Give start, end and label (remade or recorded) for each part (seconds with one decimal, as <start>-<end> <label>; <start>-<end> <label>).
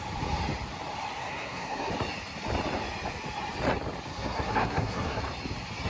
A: 0.0-1.2 recorded; 1.2-1.9 remade; 1.9-4.1 recorded; 4.1-5.2 remade; 5.2-5.9 recorded